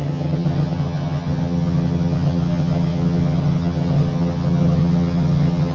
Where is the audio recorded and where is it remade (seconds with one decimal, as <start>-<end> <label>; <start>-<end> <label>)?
0.0-5.7 remade